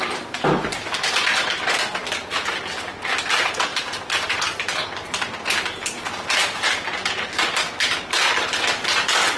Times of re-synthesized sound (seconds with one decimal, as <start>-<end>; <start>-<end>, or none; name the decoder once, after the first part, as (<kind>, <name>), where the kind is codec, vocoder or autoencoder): 3.7-4.4 (vocoder, BigVGAN v2)